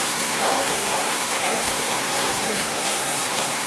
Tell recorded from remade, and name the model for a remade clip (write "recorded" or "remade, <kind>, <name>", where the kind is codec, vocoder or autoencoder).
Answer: remade, codec, SNAC